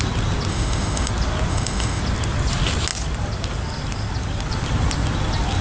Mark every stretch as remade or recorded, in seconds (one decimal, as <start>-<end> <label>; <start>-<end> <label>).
0.0-0.5 recorded; 0.5-1.1 remade; 1.1-1.5 recorded; 1.5-2.0 remade; 2.0-5.6 recorded